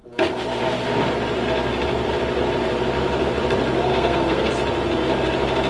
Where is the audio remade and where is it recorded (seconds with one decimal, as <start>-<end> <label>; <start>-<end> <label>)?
0.0-3.9 recorded; 3.9-4.5 remade; 4.5-5.7 recorded